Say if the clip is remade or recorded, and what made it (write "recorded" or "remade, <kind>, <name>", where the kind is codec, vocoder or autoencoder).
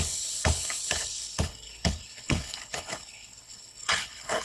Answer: remade, codec, HILCodec